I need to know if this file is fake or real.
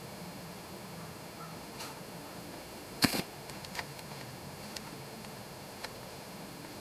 fake